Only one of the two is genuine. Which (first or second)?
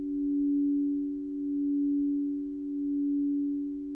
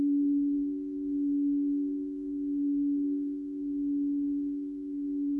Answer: first